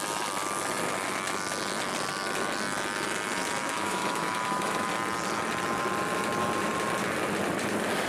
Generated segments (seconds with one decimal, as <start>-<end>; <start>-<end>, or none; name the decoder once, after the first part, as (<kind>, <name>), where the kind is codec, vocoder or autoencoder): 3.6-4.9 (autoencoder, DAC-VAE)